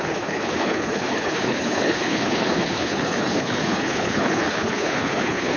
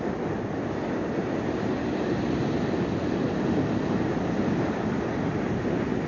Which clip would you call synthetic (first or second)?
first